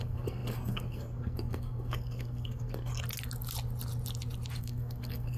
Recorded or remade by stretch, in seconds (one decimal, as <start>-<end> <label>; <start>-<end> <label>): 0.0-2.9 remade; 2.9-4.6 recorded; 4.6-5.4 remade